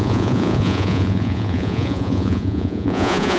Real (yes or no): no